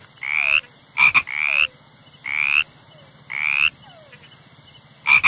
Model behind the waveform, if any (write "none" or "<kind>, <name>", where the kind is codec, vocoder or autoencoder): none